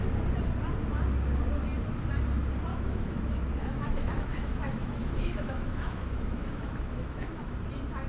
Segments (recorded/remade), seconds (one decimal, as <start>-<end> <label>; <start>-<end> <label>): 0.0-2.7 recorded; 2.7-7.4 remade; 7.4-8.1 recorded